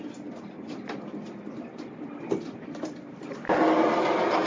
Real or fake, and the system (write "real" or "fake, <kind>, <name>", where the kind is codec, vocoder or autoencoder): real